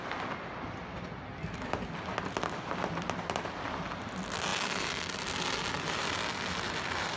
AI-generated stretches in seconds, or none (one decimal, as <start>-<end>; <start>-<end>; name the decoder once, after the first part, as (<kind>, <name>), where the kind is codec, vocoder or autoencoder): none